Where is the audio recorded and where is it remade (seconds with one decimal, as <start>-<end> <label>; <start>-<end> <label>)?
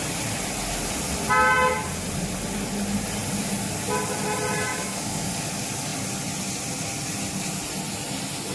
0.0-4.7 recorded; 4.7-5.3 remade; 5.3-8.5 recorded